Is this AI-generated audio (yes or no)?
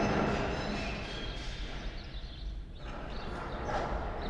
no